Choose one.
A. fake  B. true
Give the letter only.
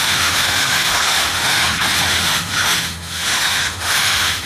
A